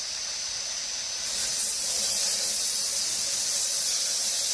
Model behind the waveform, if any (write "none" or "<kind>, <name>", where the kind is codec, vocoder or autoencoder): none